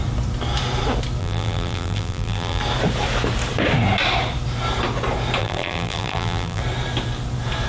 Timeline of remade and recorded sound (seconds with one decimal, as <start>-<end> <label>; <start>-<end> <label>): 0.0-1.2 recorded; 1.2-2.6 remade; 2.6-5.4 recorded; 5.4-6.6 remade; 6.6-7.7 recorded